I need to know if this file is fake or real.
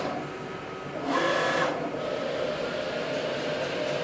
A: real